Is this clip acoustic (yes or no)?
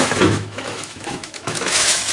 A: no